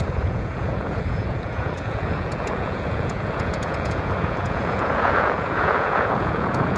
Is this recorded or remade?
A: remade